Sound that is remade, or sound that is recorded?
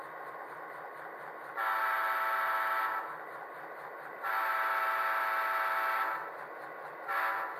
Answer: recorded